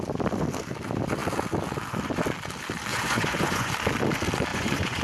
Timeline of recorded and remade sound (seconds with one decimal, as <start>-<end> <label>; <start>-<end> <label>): 0.0-2.9 recorded; 2.9-3.7 remade; 3.7-4.5 recorded; 4.5-5.0 remade